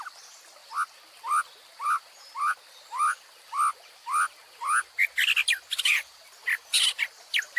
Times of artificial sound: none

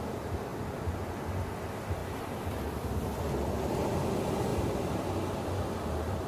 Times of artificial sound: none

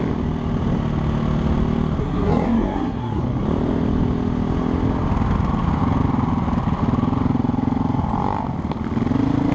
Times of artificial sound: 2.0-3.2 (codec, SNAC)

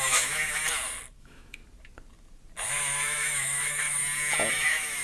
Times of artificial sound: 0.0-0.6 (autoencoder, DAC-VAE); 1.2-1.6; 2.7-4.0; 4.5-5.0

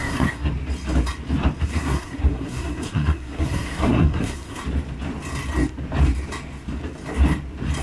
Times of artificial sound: 0.0-0.5 (codec, SNAC); 1.6-4.6